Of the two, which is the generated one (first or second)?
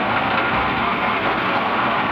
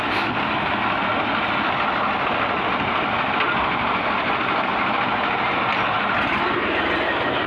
first